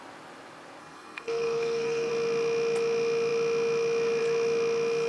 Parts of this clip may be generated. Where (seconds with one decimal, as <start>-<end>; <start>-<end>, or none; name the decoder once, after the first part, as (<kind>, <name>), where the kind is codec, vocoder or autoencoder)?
0.8-2.1 (codec, SNAC)